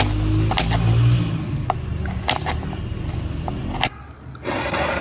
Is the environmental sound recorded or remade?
recorded